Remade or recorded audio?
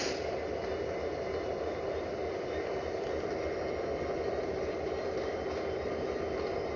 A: recorded